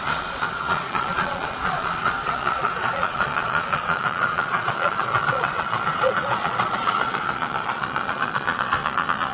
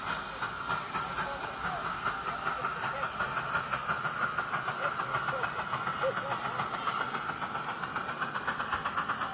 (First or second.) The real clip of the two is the second